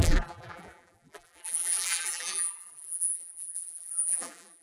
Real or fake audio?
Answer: fake